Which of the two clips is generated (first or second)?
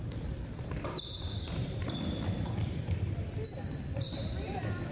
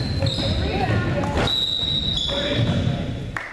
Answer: first